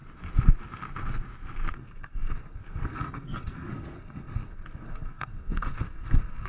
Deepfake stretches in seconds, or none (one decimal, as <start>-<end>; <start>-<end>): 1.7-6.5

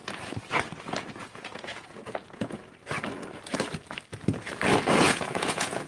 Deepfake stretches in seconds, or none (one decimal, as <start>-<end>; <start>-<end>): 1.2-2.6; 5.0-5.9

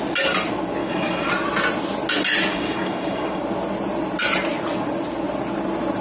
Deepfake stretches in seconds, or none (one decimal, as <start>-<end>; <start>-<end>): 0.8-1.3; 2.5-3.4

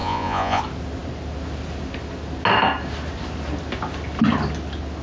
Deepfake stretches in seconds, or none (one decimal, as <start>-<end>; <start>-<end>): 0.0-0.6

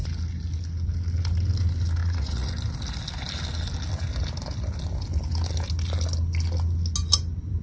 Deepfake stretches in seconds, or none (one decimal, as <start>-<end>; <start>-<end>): 2.0-2.5

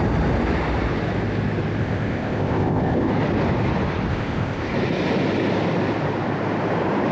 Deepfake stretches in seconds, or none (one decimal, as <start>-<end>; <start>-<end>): 1.8-3.1; 4.1-4.7

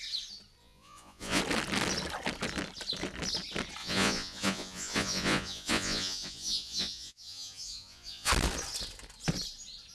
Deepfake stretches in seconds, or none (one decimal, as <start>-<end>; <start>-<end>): 0.6-1.4; 3.8-8.3

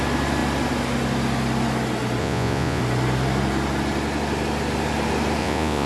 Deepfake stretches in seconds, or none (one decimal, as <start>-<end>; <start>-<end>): 2.2-2.8; 5.4-5.9